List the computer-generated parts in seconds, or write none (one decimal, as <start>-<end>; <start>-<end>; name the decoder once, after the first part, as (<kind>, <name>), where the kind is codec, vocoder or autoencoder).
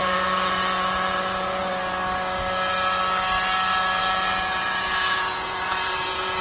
0.0-1.7 (vocoder, Vocos); 4.0-6.4